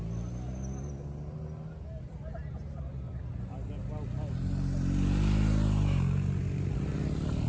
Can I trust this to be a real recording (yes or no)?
yes